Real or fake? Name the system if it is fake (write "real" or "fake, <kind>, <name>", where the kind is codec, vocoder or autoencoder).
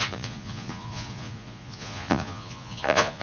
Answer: fake, vocoder, Vocos